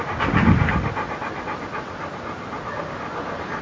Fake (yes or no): no